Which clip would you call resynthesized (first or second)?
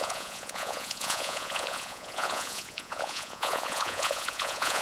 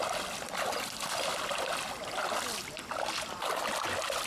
first